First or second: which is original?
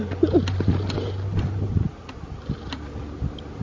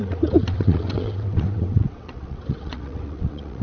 first